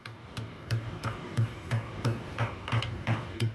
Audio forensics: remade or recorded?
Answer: remade